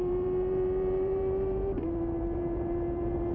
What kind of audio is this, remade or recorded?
remade